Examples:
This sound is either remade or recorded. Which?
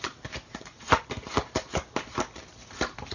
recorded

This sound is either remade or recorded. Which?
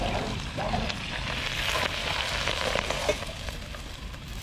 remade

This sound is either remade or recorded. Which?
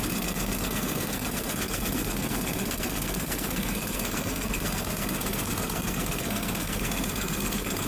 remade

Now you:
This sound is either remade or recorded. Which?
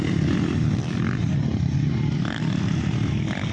recorded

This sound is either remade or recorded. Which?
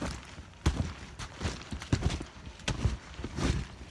recorded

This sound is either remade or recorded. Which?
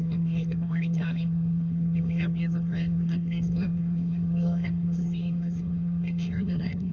remade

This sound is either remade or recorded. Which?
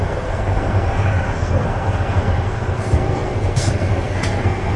remade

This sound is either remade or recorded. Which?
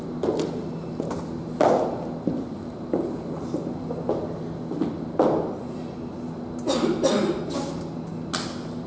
recorded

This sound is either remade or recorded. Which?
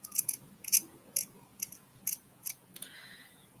remade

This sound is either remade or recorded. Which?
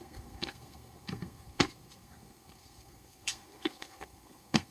remade